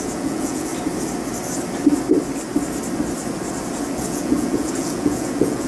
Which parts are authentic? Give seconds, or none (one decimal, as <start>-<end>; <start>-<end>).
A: 0.7-4.1